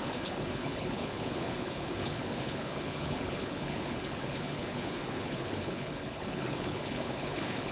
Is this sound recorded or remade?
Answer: remade